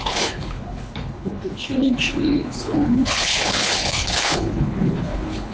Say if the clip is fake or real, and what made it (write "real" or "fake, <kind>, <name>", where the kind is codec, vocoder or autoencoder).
fake, codec, HILCodec